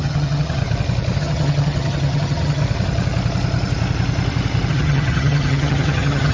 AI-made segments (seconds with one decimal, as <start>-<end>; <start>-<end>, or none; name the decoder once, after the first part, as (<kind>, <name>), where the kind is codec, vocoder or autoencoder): 0.0-0.6 (vocoder, HiFi-GAN); 1.2-2.6; 4.7-6.3